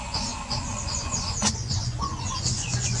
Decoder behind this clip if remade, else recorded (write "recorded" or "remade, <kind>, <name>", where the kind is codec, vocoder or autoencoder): remade, vocoder, Vocos